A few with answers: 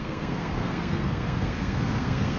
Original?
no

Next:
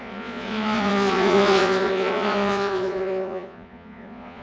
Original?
no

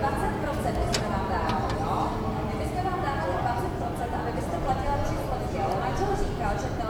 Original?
yes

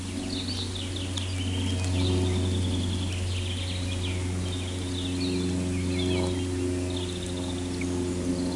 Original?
yes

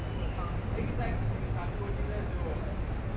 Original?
yes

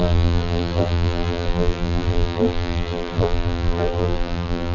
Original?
no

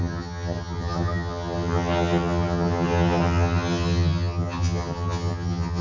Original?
no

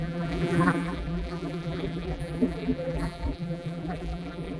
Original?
no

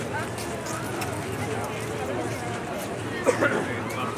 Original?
yes